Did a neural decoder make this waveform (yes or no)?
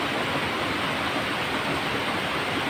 no